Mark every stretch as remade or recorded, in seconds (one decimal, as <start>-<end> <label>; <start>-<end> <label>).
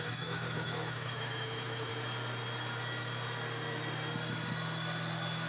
0.0-1.9 remade; 1.9-5.5 recorded